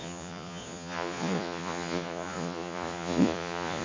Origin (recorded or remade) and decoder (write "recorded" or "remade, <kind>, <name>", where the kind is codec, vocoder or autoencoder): remade, vocoder, Vocos